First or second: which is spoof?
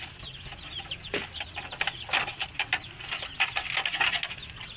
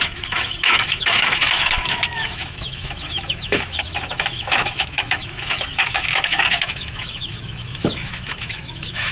second